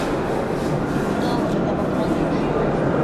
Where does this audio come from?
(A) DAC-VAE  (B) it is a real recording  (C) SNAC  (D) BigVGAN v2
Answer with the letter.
B